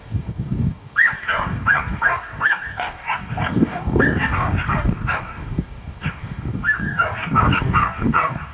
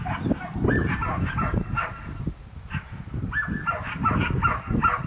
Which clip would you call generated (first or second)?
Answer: first